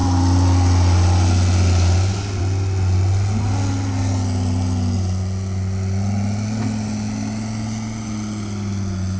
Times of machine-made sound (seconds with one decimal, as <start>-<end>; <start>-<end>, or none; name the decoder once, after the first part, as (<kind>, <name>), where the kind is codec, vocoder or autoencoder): none